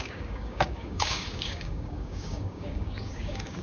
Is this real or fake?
fake